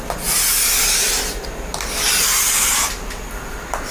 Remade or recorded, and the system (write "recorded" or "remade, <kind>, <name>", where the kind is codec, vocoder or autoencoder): recorded